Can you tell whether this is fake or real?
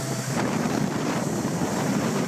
fake